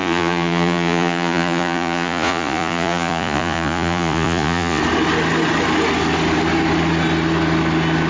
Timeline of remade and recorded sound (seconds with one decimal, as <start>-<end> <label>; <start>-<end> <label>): 0.0-4.8 remade; 4.8-8.1 recorded